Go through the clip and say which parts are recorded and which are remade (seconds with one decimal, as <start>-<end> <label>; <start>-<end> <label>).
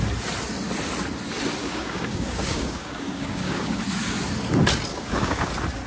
0.0-1.6 recorded; 1.6-3.8 remade; 3.8-4.9 recorded; 4.9-5.5 remade; 5.5-5.9 recorded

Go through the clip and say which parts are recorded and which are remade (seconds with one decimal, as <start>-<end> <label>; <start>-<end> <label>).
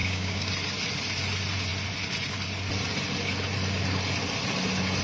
0.0-0.5 remade; 0.5-5.0 recorded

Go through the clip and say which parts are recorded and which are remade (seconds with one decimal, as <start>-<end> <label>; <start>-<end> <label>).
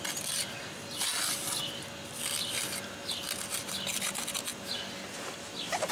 0.0-5.9 recorded